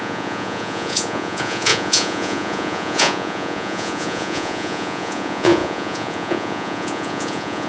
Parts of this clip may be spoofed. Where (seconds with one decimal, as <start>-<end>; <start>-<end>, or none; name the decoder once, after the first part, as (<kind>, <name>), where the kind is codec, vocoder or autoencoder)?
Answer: 0.0-7.7 (vocoder, Vocos)